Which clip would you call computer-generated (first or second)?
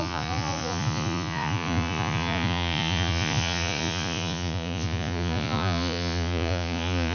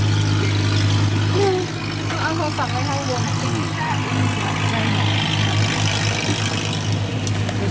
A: first